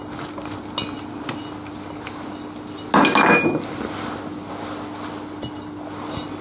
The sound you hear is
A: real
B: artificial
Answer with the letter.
A